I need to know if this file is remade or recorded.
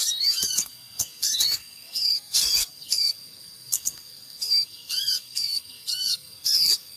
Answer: remade